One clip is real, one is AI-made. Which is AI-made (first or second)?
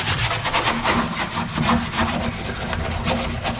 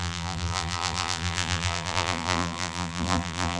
second